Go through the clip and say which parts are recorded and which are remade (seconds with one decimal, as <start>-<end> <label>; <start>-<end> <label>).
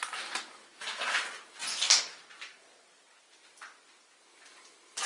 0.0-5.1 recorded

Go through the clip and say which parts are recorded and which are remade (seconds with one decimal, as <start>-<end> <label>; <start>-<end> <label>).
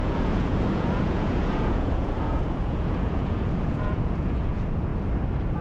0.0-4.9 remade; 4.9-5.6 recorded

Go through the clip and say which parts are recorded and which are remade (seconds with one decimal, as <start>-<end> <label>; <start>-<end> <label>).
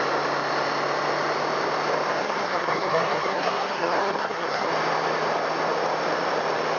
0.0-2.2 recorded; 2.2-4.7 remade; 4.7-6.8 recorded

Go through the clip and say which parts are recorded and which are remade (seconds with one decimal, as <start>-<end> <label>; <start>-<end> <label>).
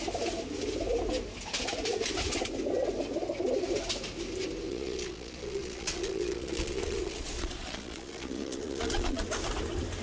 0.0-4.7 recorded; 4.7-9.2 remade; 9.2-10.0 recorded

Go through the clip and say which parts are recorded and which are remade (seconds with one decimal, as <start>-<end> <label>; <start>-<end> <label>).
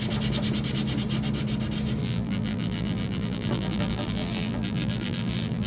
0.0-2.0 recorded; 2.0-5.7 remade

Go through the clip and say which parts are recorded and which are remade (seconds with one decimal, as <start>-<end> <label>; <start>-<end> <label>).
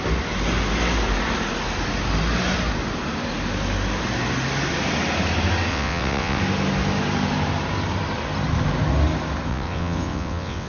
0.0-5.7 recorded; 5.7-6.4 remade; 6.4-9.5 recorded; 9.5-10.7 remade